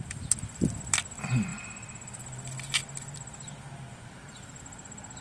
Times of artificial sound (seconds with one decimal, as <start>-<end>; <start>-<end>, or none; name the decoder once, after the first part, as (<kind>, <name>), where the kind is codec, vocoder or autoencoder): none